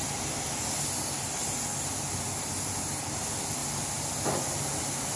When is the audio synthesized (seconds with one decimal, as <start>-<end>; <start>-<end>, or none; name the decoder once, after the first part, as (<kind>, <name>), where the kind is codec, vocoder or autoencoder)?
none